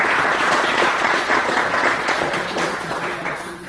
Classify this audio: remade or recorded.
remade